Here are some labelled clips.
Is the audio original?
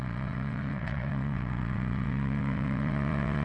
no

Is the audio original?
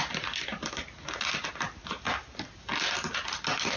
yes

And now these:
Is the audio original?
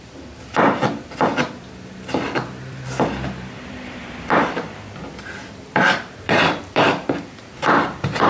no